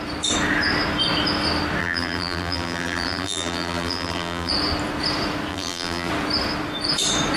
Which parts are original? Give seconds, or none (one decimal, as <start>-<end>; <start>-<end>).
0.0-1.8; 4.5-5.5; 6.1-7.4